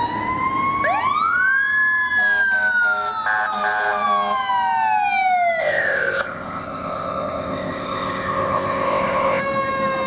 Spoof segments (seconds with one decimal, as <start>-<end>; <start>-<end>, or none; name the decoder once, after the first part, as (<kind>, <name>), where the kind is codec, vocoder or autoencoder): 5.6-9.4 (codec, ZipCodec)